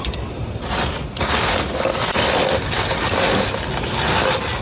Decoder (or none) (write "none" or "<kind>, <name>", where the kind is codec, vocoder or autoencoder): none